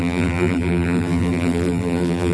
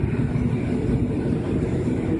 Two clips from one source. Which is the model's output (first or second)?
first